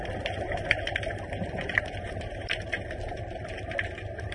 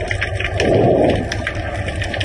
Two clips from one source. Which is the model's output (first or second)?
first